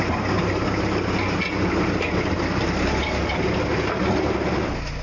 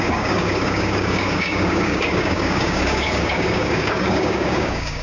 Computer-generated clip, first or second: second